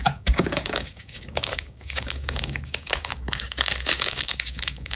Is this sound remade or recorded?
remade